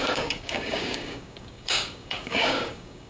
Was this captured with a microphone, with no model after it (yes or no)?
no